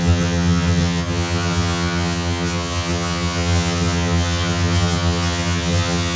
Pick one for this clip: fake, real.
fake